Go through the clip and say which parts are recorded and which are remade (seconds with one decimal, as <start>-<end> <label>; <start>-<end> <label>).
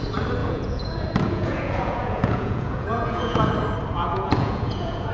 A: 0.0-0.4 recorded; 0.4-3.5 remade; 3.5-4.0 recorded; 4.0-5.1 remade